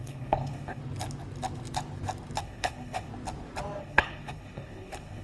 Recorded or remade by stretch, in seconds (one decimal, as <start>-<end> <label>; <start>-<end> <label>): 0.0-0.8 remade; 0.8-2.4 recorded; 2.4-3.1 remade; 3.1-3.8 recorded; 3.8-5.2 remade